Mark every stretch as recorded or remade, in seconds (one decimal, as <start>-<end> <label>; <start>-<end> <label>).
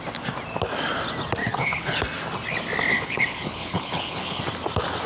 0.0-1.4 recorded; 1.4-2.0 remade; 2.0-2.9 recorded; 2.9-4.4 remade; 4.4-5.1 recorded